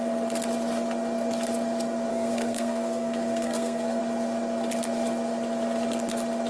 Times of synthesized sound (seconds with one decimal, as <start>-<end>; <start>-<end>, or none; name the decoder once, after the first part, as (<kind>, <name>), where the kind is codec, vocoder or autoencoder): 2.1-4.0 (codec, SNAC)